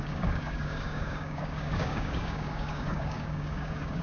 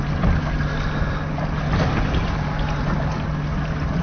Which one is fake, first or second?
first